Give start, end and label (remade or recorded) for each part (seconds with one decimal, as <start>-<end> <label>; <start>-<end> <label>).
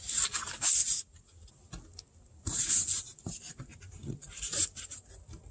0.0-0.8 recorded; 0.8-1.5 remade; 1.5-2.5 recorded; 2.5-5.5 remade